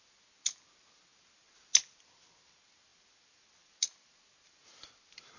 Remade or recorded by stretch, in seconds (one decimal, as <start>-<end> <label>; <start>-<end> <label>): 0.0-5.4 recorded